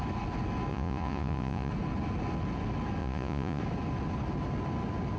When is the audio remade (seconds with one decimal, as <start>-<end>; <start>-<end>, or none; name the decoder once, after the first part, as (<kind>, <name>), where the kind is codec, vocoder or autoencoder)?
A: 0.7-1.7 (vocoder, Vocos); 3.0-3.6